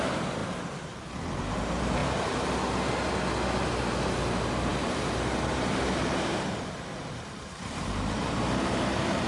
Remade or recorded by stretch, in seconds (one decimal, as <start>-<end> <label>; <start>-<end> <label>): 0.0-2.0 remade; 2.0-3.7 recorded; 3.7-9.3 remade